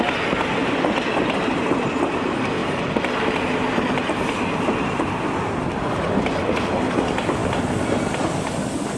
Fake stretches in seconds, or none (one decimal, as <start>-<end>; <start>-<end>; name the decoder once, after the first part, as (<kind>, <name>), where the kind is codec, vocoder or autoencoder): 0.0-0.6 (vocoder, BigVGAN v2); 1.5-2.6; 4.3-9.0